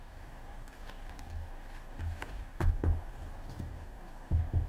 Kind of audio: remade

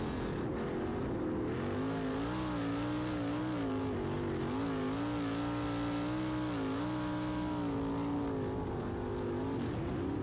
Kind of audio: recorded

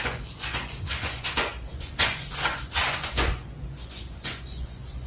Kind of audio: remade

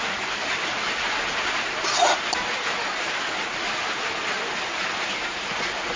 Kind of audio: recorded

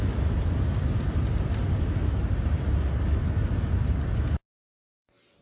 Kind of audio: recorded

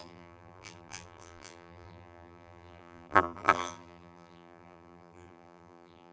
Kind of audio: remade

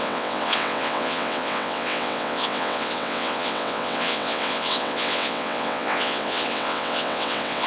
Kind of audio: remade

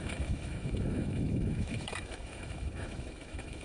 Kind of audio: remade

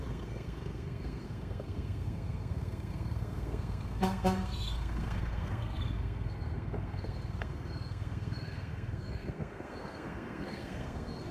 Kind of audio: remade